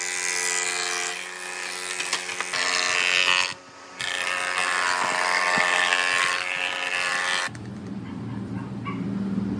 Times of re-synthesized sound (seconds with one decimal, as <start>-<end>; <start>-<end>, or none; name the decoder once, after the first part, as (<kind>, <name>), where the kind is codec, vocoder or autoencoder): 7.1-7.7 (vocoder, BigVGAN v2)